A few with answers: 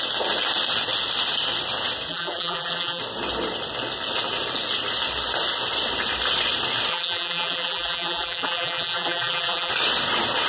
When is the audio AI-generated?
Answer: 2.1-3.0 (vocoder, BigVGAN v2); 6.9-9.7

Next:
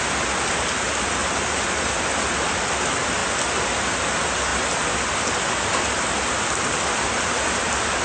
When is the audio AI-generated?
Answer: 1.2-1.9 (vocoder, BigVGAN v2)

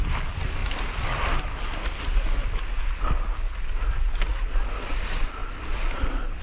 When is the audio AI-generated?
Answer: 0.0-0.6 (vocoder, BigVGAN v2); 3.6-4.3; 4.9-5.4; 6.0-6.4

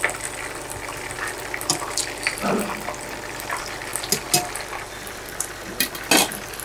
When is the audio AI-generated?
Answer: none